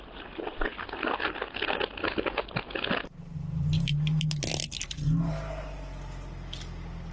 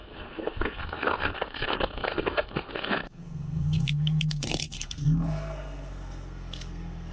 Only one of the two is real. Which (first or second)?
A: first